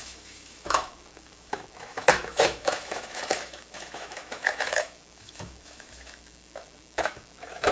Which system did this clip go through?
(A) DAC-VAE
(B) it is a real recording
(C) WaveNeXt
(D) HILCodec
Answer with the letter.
A